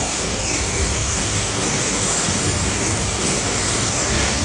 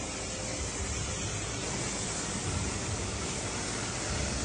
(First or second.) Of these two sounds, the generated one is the first